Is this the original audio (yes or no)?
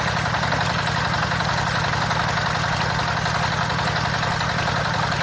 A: yes